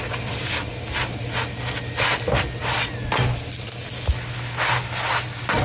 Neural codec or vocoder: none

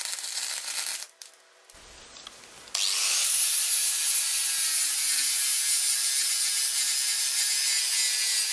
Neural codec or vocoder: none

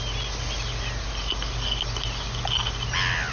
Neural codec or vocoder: none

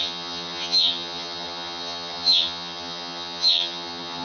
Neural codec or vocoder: vocoder, HiFi-GAN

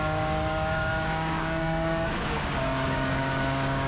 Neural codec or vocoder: codec, DAC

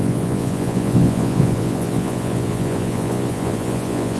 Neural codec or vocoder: vocoder, Vocos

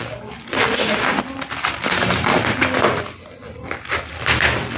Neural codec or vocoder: none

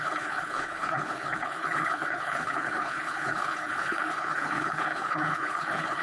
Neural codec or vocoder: codec, HILCodec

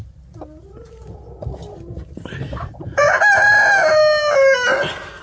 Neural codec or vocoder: none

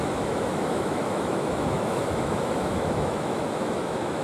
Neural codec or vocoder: autoencoder, DAC-VAE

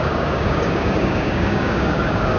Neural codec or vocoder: codec, DAC